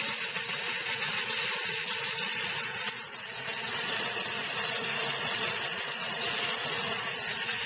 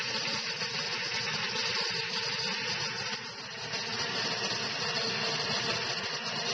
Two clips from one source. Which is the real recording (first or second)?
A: second